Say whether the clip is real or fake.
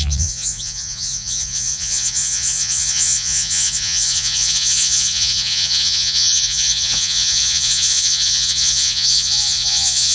fake